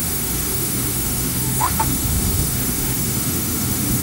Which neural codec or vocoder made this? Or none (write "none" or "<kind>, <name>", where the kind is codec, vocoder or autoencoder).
autoencoder, DAC-VAE